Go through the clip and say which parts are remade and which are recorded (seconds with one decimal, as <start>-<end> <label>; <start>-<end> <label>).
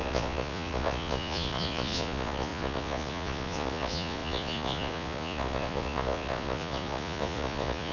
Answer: 0.0-7.9 remade